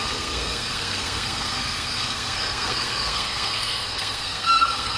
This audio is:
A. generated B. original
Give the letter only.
A